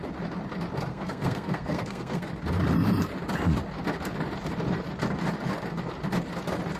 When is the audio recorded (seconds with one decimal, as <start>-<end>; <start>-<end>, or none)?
0.0-0.9; 2.3-6.8